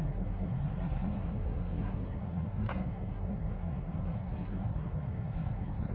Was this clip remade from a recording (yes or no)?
yes